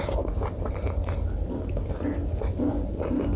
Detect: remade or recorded recorded